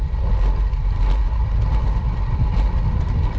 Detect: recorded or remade recorded